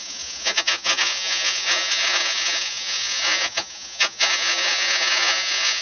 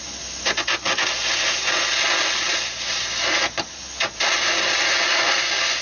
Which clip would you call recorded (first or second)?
second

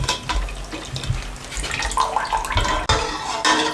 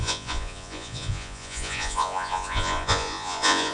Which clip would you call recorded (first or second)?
first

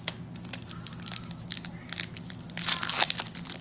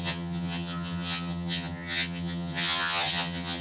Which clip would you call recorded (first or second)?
first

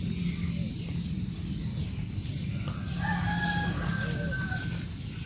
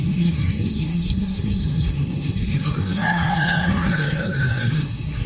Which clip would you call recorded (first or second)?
first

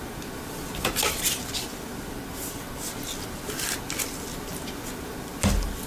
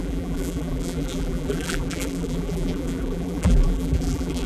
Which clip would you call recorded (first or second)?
first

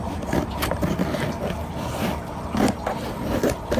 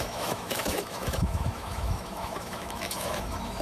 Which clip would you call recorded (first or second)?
first